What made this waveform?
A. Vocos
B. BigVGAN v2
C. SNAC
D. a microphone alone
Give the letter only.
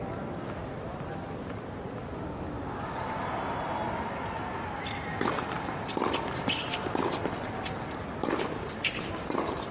D